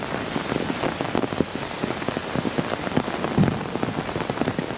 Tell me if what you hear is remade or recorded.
recorded